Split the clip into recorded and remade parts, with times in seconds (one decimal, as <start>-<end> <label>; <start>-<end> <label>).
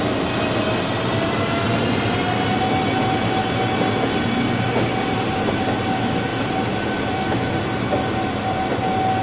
0.0-6.3 recorded; 6.3-7.5 remade; 7.5-9.2 recorded